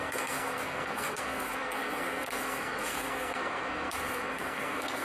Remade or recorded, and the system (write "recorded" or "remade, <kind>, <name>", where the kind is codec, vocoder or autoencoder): remade, codec, SNAC